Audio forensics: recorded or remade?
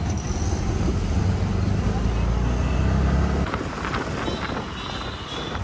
recorded